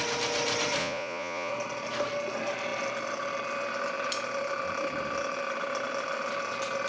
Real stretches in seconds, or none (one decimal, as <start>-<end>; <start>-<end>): 0.0-0.8; 1.5-6.9